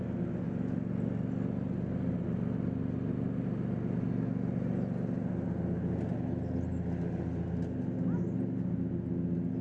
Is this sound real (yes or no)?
yes